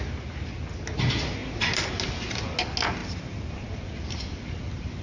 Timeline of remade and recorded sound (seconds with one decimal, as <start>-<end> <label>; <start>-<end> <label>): 0.0-1.4 recorded; 1.4-1.9 remade; 1.9-3.0 recorded; 3.0-3.7 remade; 3.7-5.0 recorded